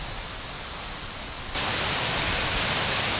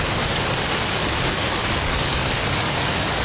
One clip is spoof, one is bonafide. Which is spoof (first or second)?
second